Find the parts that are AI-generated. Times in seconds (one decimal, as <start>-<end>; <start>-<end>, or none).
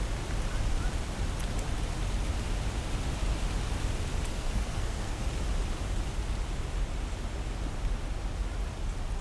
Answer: 4.3-5.2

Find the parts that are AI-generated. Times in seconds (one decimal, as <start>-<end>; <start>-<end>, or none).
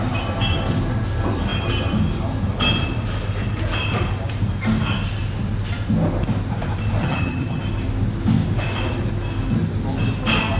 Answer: 7.0-7.6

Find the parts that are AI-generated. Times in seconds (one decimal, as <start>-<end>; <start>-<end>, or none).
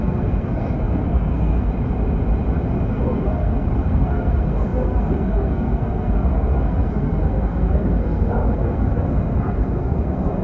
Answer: 0.0-1.7; 2.9-10.4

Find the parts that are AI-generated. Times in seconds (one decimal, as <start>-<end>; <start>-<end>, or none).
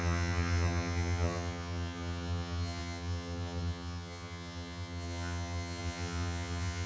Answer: 0.0-6.9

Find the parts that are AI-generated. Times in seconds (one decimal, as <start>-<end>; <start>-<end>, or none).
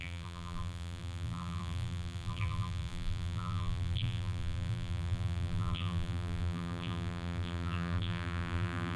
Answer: 0.0-9.0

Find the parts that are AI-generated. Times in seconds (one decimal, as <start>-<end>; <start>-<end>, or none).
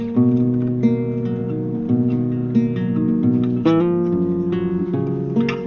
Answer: none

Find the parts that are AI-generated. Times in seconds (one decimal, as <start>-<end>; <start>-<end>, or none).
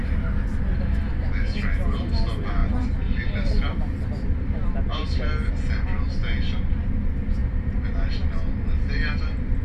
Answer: 2.6-5.5; 7.4-8.0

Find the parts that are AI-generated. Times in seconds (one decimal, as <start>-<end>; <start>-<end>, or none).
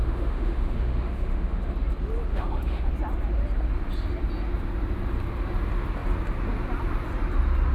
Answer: 0.0-1.7; 2.3-2.9